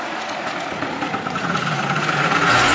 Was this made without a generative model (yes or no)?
no